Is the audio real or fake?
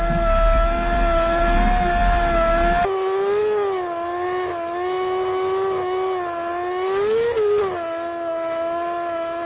real